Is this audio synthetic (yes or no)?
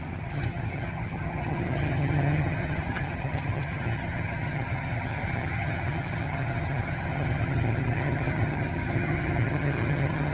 yes